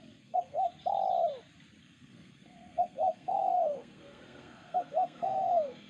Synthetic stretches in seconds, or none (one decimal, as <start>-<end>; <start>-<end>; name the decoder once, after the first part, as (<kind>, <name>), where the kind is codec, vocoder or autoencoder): 0.0-0.7 (codec, SNAC); 1.8-5.9